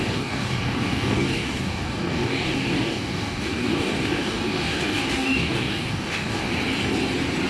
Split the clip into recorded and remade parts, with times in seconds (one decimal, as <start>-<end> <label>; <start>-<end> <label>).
0.0-6.4 remade; 6.4-7.5 recorded

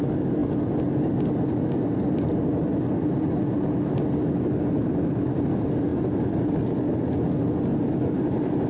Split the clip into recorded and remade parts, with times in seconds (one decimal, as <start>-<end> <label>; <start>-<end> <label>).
0.0-8.7 recorded

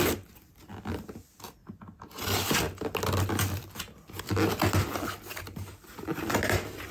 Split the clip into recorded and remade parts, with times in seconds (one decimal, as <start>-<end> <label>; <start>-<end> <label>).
0.0-6.9 recorded

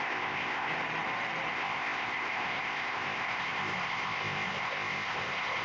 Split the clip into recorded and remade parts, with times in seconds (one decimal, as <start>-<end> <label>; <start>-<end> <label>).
0.0-0.7 remade; 0.7-1.5 recorded; 1.5-5.6 remade

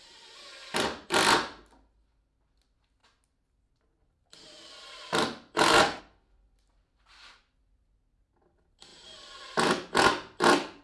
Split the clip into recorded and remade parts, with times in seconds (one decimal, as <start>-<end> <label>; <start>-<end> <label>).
0.0-10.8 recorded